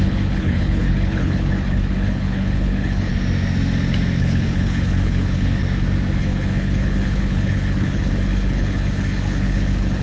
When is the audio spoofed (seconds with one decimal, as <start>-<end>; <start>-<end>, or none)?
0.0-3.1; 4.2-5.6; 6.2-10.0